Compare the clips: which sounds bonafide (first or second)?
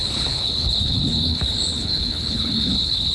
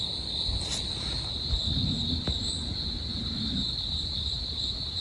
second